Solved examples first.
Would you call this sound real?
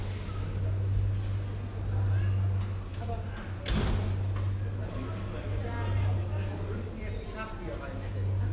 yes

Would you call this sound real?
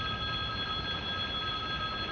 yes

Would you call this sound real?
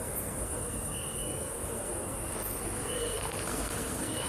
no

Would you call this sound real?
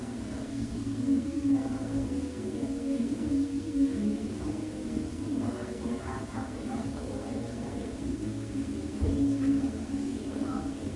no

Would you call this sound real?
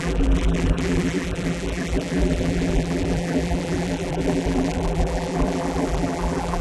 no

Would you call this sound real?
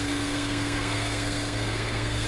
no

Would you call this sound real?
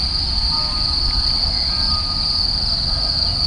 yes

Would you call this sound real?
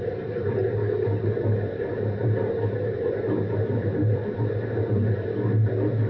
yes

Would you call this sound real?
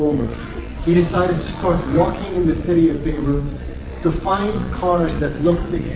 no